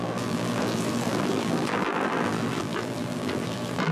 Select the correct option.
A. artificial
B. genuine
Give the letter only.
A